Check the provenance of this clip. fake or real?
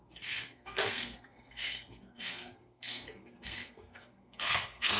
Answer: fake